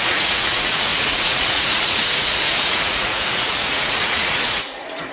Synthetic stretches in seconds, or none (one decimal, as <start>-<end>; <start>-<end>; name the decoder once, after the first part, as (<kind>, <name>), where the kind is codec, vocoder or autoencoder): 0.0-5.1 (vocoder, Vocos)